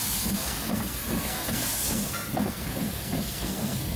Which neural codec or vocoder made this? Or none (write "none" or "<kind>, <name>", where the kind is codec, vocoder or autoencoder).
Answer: codec, SNAC